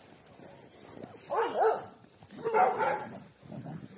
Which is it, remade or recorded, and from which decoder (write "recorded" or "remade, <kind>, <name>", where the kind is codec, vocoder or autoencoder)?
recorded